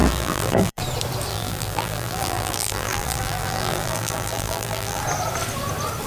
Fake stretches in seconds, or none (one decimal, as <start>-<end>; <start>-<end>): 0.0-0.8; 1.3-5.0